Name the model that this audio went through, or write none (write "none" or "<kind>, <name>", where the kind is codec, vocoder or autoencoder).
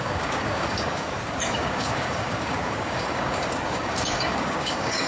codec, DAC